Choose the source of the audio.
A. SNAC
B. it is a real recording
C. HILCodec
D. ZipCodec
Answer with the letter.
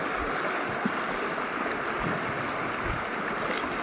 B